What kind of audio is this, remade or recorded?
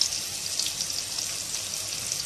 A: recorded